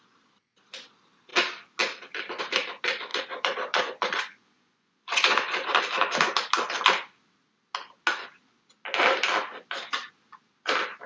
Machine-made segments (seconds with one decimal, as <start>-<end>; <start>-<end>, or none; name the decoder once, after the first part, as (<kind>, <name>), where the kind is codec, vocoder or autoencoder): 3.1-5.8 (vocoder, Vocos)